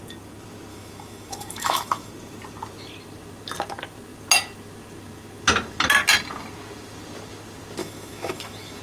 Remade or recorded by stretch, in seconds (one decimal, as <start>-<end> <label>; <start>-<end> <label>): 0.0-0.7 recorded; 0.7-2.1 remade; 2.1-7.8 recorded; 7.8-8.8 remade